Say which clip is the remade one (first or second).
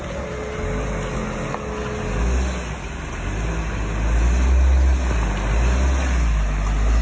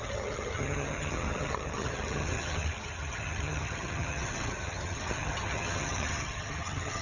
second